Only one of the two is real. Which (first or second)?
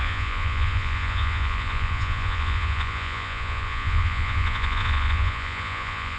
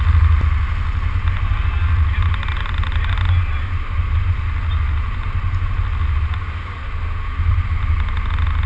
second